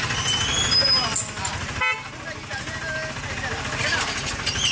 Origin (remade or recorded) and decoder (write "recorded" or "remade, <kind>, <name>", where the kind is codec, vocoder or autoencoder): recorded